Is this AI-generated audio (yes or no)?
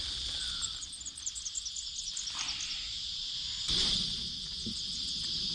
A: no